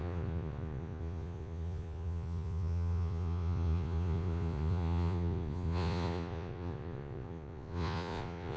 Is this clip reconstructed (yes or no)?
yes